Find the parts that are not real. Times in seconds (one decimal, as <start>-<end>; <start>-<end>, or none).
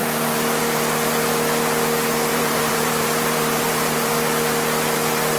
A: 2.3-4.1